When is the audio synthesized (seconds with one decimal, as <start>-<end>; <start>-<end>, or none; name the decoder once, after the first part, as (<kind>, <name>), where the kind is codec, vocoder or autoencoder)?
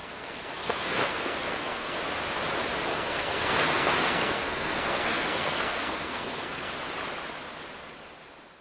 0.0-2.0 (codec, SNAC); 2.9-6.7